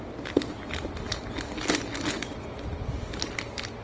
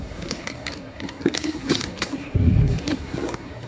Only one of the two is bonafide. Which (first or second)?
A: first